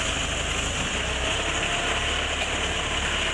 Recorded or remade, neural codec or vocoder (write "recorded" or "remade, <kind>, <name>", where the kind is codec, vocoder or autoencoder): recorded